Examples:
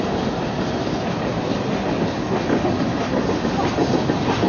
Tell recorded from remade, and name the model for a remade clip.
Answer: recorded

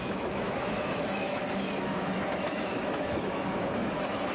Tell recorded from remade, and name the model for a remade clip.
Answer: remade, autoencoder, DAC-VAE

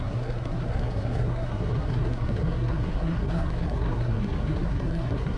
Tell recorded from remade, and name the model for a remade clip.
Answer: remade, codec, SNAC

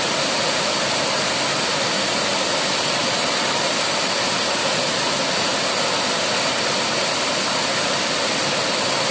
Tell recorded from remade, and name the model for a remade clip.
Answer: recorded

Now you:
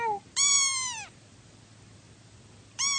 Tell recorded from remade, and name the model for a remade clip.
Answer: remade, vocoder, BigVGAN v2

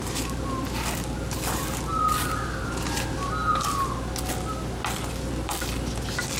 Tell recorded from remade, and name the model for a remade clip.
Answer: recorded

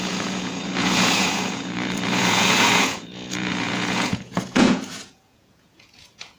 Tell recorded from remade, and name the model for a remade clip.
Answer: remade, vocoder, Vocos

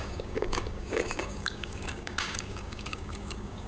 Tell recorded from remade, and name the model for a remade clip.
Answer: remade, codec, DAC